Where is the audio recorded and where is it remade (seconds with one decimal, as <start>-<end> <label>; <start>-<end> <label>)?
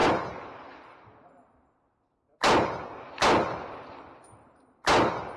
0.0-5.4 recorded